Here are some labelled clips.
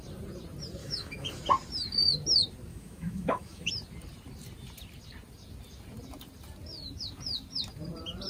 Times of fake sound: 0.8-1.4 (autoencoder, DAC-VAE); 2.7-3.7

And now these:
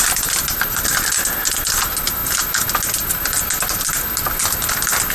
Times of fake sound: none

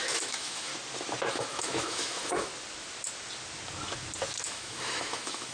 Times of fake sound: 0.0-0.7 (autoencoder, DAC-VAE); 1.3-2.5; 4.4-5.5

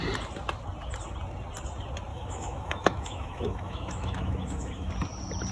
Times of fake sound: 2.1-4.9 (autoencoder, DAC-VAE)

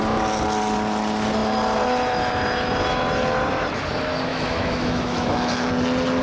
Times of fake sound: 4.3-5.7 (autoencoder, DAC-VAE)

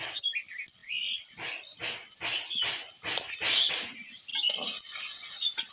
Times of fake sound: none

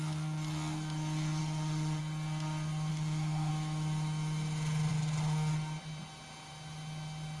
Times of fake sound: 1.4-2.0 (autoencoder, DAC-VAE); 2.9-3.5